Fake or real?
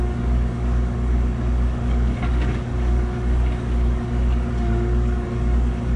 fake